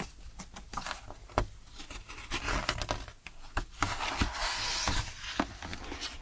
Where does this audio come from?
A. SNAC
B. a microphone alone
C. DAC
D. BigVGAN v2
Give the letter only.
B